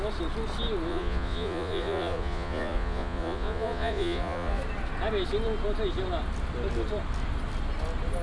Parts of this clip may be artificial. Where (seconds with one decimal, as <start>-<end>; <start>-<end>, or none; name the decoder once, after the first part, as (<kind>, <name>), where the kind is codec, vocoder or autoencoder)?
0.9-4.6 (vocoder, Vocos)